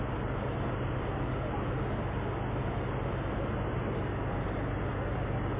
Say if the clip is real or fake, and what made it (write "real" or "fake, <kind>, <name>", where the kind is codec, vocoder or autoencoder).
real